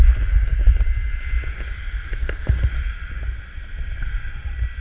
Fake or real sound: real